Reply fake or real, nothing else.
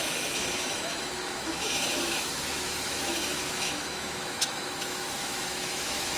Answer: fake